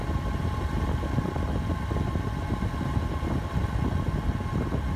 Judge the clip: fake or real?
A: real